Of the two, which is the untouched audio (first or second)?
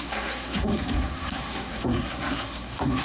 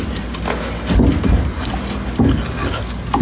second